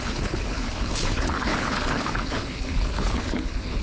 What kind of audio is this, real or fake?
fake